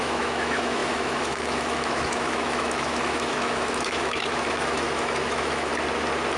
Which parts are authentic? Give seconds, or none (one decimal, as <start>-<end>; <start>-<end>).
5.7-6.4